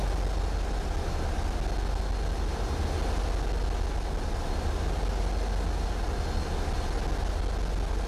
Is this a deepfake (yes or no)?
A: no